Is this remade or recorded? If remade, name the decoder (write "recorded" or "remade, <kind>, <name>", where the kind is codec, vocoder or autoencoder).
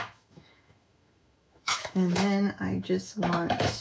remade, autoencoder, DAC-VAE